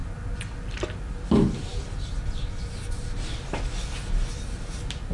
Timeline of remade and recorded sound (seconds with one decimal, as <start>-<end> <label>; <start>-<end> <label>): 0.0-5.1 recorded